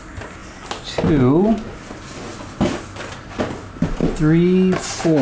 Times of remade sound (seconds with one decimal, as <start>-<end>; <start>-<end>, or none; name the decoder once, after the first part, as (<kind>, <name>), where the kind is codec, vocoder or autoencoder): none